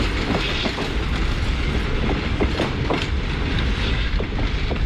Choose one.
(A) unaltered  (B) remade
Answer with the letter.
A